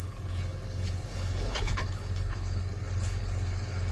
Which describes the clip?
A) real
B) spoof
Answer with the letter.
B